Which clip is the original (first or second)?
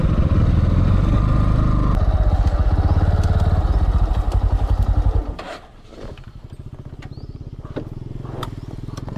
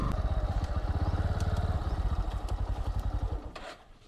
first